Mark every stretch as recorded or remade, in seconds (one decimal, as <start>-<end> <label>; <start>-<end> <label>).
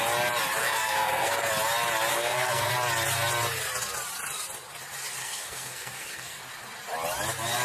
0.0-0.6 recorded; 0.6-1.5 remade; 1.5-2.1 recorded; 2.1-2.7 remade; 2.7-5.2 recorded; 5.2-6.4 remade; 6.4-7.6 recorded